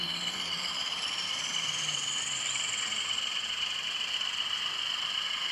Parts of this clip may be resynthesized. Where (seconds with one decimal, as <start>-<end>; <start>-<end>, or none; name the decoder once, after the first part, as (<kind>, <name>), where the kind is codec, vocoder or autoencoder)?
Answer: 0.0-0.8 (vocoder, BigVGAN v2); 1.5-5.5